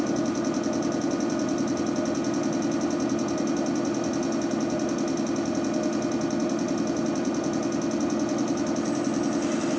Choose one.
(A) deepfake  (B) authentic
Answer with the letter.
B